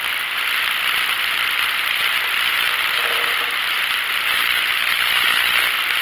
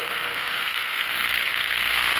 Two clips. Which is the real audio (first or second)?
first